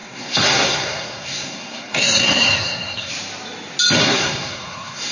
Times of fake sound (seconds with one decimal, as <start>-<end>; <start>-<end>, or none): 0.0-3.1; 4.0-5.1